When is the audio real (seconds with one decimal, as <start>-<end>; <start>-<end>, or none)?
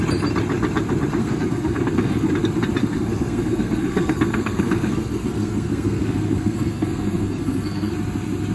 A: 0.0-1.2; 2.3-2.8; 7.9-8.5